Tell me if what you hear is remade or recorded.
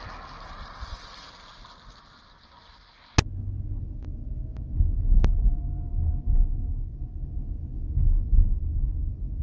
recorded